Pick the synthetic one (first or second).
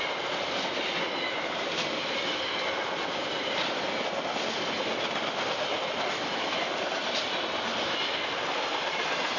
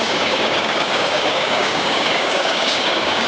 second